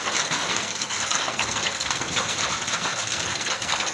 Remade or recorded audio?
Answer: remade